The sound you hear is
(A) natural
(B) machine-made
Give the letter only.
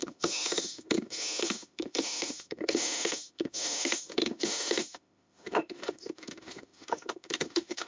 B